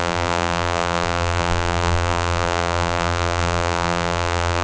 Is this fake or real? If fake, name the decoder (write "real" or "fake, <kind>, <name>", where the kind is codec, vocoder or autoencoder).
fake, vocoder, BigVGAN v2